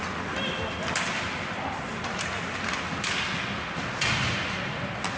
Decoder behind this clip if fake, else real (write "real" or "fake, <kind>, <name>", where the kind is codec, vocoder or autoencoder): real